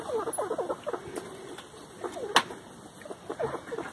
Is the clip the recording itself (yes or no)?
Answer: yes